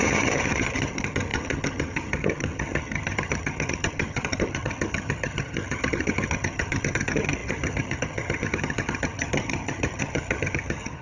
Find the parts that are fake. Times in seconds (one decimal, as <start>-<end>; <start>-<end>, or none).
0.0-11.0